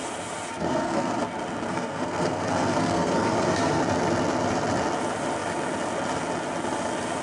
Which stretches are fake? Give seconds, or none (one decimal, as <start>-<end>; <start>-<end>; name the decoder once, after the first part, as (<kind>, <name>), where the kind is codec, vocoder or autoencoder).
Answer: 0.5-1.2 (codec, SNAC); 1.7-3.8